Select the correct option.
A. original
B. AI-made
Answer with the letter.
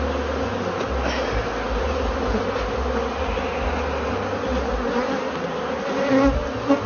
A